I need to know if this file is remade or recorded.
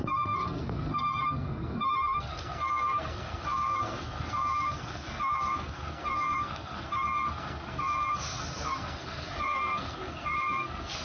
remade